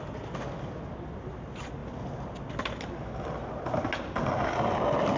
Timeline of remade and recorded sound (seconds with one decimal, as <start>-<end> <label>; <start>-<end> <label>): 0.0-5.2 recorded